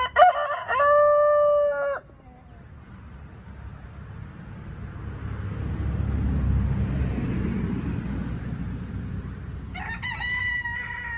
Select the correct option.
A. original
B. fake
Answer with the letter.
A